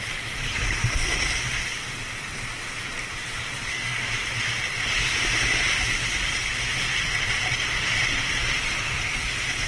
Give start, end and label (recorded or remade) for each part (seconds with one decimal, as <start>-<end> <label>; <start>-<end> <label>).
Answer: 0.0-3.6 recorded; 3.6-4.1 remade; 4.1-9.7 recorded